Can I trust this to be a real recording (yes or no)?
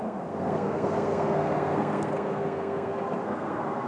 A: no